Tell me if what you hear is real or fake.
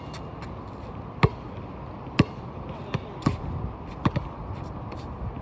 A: real